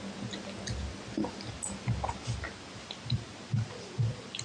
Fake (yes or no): no